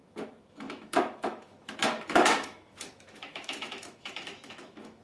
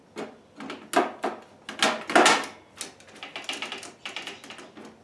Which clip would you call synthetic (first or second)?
first